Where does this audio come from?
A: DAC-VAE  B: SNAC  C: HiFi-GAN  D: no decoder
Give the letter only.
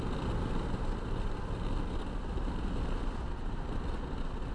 D